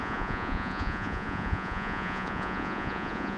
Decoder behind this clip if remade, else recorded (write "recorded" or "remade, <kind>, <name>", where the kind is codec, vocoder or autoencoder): remade, vocoder, Vocos